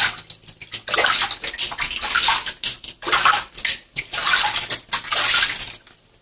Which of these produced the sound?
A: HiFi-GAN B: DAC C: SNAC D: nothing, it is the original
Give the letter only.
D